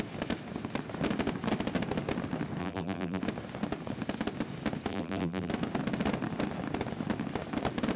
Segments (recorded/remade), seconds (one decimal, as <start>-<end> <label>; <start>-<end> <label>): 0.0-2.6 recorded; 2.6-3.2 remade; 3.2-4.9 recorded; 4.9-5.5 remade; 5.5-8.0 recorded